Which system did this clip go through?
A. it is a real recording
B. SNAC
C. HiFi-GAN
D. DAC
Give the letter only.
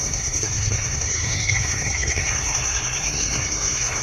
B